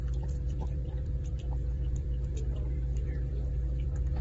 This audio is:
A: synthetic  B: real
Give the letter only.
A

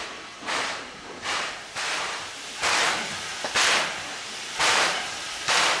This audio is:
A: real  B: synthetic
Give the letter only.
B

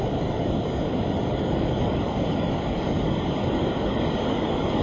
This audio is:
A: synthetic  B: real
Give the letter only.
A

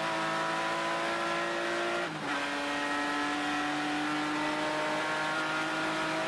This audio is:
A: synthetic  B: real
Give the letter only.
B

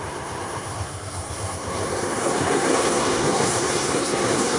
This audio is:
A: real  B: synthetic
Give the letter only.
B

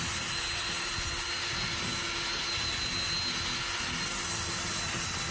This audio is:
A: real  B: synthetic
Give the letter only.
A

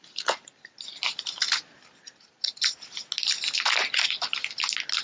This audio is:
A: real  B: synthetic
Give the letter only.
A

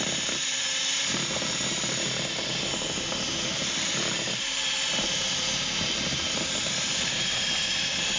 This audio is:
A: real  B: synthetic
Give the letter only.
B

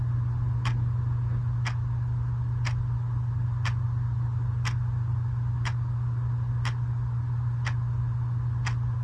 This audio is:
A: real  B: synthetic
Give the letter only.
A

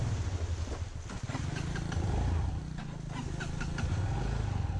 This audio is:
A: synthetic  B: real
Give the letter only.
B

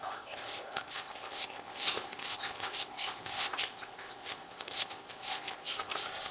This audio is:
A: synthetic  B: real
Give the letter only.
A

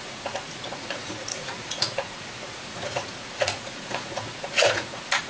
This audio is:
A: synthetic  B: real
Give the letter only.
A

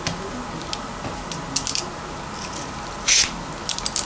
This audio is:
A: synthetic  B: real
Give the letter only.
B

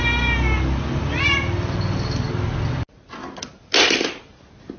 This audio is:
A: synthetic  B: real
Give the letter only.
B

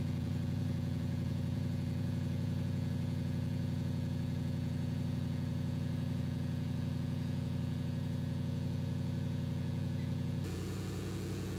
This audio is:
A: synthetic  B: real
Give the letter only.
A